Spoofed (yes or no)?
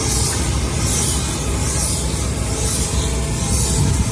no